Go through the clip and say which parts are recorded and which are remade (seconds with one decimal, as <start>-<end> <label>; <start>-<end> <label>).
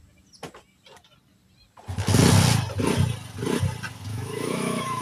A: 0.0-4.1 recorded; 4.1-5.0 remade